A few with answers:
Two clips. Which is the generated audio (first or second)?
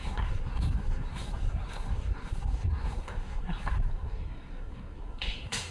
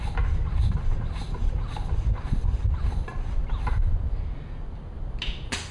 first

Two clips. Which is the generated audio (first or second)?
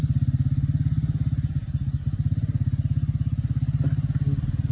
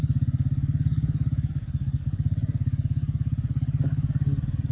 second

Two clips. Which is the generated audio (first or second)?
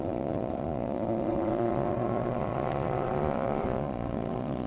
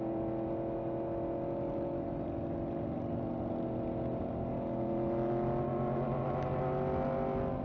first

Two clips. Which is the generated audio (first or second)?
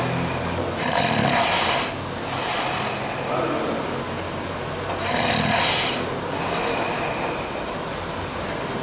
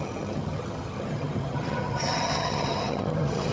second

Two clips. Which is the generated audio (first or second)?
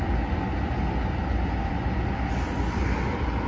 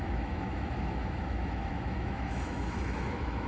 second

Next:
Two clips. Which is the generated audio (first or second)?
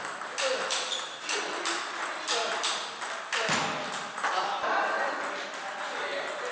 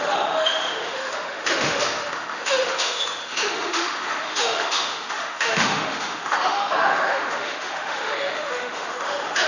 second